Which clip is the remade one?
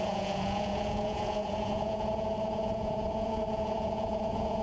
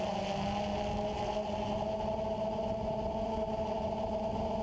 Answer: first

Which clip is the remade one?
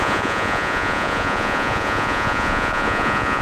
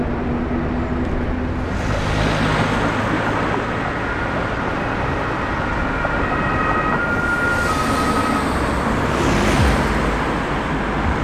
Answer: first